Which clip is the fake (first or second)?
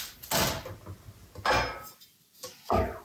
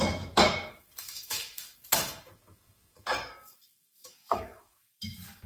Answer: second